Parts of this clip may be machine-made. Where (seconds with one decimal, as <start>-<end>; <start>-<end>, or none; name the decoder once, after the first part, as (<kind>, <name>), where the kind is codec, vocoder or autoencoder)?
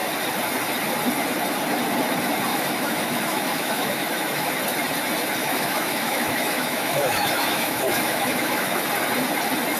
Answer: 2.5-4.5 (autoencoder, DAC-VAE); 5.4-8.8